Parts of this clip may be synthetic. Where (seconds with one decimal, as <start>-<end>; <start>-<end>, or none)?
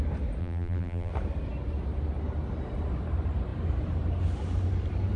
0.4-1.1